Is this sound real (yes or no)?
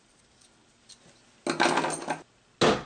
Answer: yes